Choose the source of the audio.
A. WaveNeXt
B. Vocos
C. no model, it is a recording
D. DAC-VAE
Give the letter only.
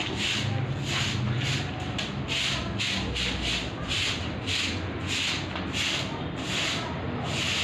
C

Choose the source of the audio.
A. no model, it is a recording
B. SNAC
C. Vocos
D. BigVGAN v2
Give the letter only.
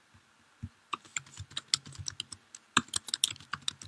A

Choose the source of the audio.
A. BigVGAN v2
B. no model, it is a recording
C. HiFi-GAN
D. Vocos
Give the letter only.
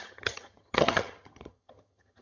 C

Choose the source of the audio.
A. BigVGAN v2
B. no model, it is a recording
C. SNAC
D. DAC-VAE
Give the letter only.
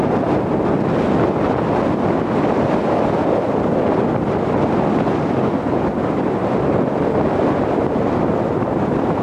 B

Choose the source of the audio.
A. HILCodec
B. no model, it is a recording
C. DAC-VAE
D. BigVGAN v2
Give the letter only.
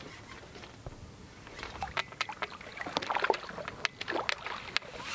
B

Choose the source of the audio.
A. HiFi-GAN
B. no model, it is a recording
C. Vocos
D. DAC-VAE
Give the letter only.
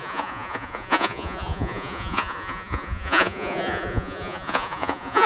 C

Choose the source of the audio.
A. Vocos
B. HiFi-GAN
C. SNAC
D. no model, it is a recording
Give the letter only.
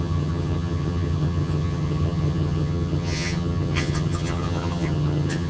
B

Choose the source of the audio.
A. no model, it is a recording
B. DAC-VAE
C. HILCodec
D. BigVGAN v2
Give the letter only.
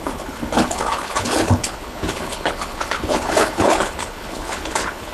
C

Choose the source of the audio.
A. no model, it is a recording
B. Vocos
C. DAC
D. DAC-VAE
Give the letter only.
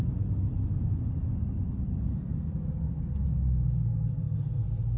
A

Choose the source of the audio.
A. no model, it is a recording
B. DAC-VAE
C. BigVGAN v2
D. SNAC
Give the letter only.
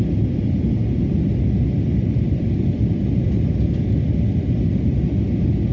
A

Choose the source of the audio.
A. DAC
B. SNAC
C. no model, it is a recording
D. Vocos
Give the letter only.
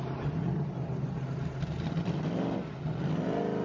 C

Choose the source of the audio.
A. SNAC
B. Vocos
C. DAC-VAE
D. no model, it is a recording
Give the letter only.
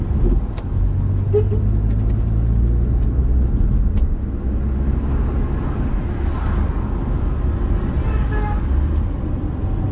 D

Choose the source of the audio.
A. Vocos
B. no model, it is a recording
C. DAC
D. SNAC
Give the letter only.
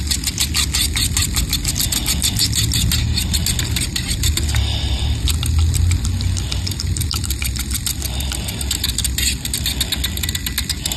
B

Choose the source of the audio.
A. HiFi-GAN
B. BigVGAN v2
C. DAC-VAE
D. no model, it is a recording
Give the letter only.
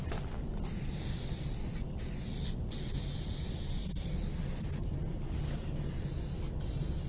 D